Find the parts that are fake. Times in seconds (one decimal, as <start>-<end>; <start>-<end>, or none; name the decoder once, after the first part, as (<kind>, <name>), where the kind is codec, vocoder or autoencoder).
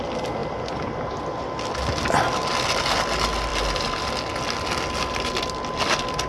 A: none